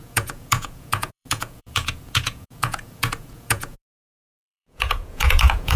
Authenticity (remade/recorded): remade